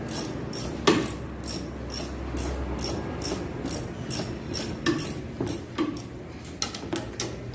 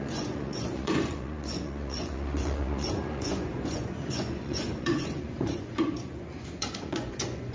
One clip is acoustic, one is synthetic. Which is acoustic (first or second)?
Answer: first